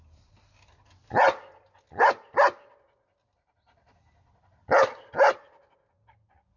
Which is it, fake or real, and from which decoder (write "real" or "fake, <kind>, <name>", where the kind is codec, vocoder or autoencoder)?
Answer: real